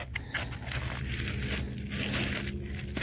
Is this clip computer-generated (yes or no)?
no